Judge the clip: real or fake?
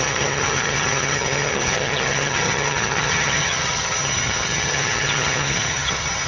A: fake